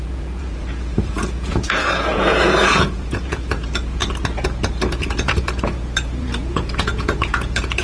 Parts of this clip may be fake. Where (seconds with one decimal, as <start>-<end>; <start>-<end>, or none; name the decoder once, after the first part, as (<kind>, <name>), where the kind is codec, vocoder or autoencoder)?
0.0-4.0 (vocoder, Vocos); 4.7-7.8